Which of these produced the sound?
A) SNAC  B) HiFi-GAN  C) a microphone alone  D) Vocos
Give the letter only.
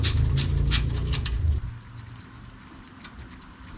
C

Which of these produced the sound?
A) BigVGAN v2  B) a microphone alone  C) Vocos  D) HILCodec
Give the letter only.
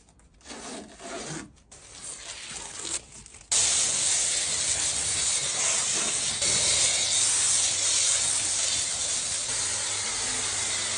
B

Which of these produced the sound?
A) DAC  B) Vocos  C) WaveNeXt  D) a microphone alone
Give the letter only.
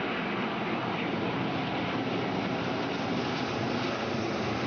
D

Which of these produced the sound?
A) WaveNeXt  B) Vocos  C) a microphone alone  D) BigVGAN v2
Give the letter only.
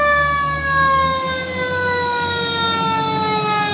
C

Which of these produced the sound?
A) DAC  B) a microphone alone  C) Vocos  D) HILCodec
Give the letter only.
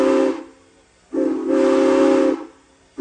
B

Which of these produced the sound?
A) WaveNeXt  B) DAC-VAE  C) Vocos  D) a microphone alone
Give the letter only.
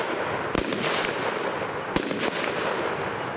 D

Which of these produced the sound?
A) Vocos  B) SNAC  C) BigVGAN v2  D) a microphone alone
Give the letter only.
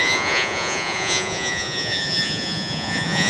A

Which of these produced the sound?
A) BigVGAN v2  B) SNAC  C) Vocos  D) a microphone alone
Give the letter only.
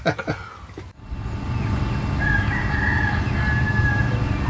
D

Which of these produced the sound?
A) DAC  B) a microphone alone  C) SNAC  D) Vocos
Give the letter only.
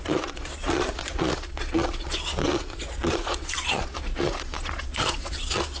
D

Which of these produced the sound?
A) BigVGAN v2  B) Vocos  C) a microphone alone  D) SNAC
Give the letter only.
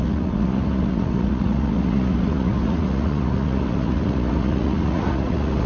B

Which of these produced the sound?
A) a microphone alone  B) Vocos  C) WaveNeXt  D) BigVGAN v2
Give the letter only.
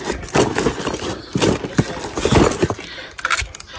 A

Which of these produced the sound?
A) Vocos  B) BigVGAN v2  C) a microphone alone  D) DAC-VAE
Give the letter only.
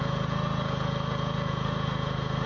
A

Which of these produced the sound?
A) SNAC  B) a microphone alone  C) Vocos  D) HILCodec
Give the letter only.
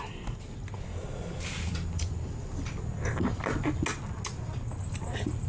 B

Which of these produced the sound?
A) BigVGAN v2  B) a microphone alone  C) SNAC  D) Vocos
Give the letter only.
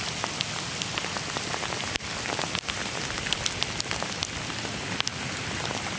B